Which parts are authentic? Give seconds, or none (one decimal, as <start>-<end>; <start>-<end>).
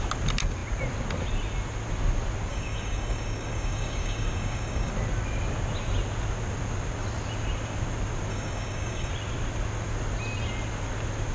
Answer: 0.0-2.5; 4.9-8.3; 9.1-11.3